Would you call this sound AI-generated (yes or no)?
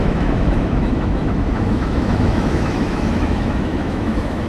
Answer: yes